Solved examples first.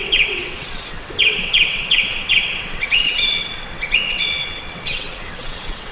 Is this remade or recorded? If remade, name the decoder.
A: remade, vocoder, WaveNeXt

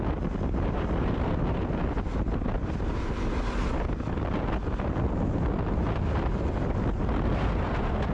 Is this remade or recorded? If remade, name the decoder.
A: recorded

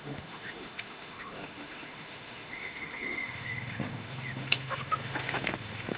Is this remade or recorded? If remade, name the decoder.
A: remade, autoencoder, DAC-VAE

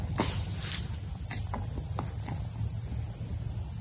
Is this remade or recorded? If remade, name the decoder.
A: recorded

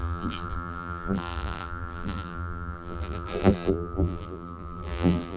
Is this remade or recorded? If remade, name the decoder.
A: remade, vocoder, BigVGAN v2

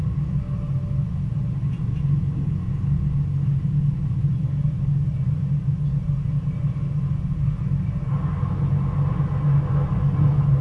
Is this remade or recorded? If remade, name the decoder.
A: recorded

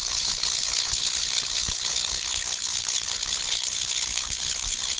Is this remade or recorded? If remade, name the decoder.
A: remade, codec, HILCodec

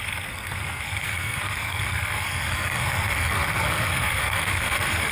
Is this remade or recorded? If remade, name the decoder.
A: remade, codec, SNAC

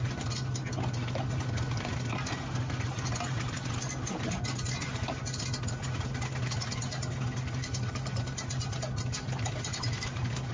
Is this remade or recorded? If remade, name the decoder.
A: recorded